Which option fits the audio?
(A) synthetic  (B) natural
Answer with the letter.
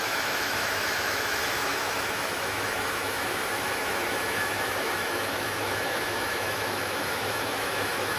A